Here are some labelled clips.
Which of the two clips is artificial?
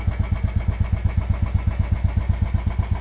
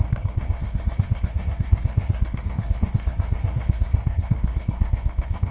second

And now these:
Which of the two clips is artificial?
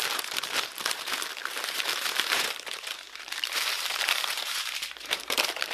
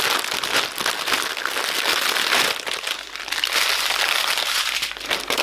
first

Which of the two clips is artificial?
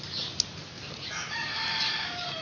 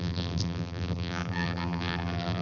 second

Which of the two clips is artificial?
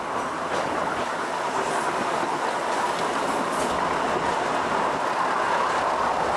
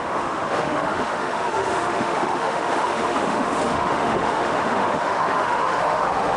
second